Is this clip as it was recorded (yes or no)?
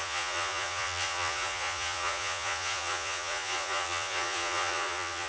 no